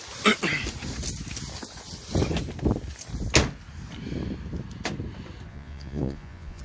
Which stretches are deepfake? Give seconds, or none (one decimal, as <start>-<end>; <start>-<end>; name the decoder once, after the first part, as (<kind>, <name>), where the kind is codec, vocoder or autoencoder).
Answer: 5.5-6.6 (vocoder, Vocos)